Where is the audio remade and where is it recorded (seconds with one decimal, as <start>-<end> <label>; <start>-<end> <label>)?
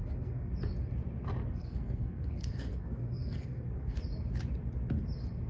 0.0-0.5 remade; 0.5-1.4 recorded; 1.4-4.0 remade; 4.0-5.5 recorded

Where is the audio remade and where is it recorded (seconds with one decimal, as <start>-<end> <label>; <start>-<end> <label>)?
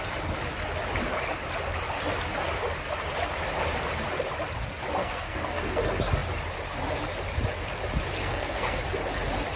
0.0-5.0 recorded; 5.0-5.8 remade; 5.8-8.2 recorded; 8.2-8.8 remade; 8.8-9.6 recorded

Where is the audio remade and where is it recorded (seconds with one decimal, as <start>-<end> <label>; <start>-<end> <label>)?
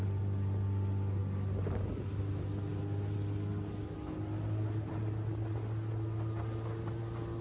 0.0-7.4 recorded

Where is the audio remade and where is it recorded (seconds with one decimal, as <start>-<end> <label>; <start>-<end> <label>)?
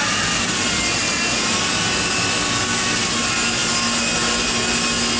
0.0-5.2 recorded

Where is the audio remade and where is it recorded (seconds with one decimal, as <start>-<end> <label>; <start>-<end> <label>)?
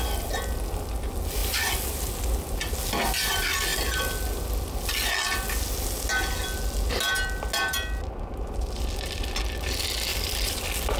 0.0-1.4 recorded; 1.4-2.1 remade; 2.1-10.1 recorded; 10.1-10.6 remade; 10.6-11.0 recorded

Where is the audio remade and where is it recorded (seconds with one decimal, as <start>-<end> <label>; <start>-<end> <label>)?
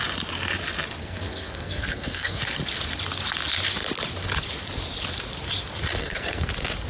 0.0-1.0 recorded; 1.0-2.4 remade; 2.4-6.0 recorded; 6.0-6.5 remade; 6.5-6.9 recorded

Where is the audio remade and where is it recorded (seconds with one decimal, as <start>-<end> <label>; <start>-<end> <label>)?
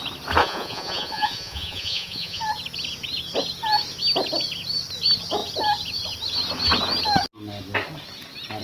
0.0-0.4 recorded; 0.4-2.4 remade; 2.4-8.6 recorded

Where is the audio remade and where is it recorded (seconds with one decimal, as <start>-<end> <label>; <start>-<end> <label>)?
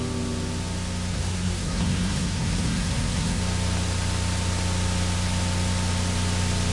0.0-1.1 recorded; 1.1-3.4 remade; 3.4-6.7 recorded